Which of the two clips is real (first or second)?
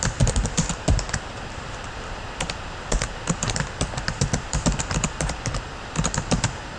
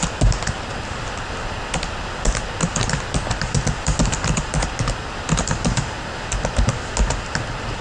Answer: second